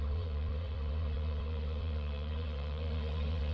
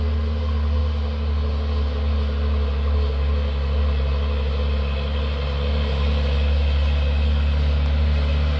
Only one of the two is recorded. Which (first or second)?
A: second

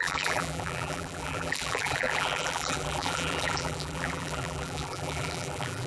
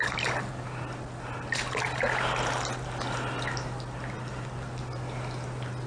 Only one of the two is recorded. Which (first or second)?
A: second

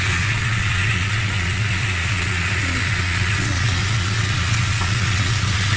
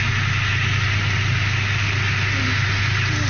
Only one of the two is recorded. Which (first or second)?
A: second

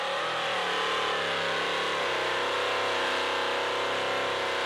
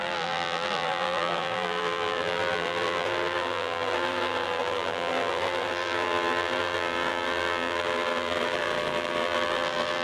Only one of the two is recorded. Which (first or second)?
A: first